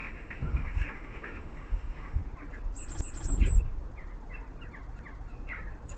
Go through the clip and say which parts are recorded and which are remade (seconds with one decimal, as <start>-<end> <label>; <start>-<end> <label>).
0.0-2.2 remade; 2.2-6.0 recorded